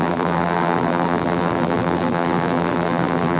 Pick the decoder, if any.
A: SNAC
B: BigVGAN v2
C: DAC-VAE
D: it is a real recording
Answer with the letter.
B